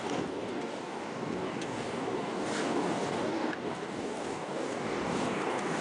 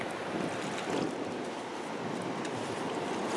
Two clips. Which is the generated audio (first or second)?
first